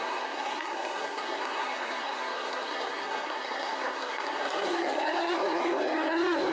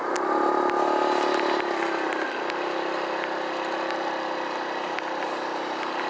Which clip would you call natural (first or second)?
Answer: second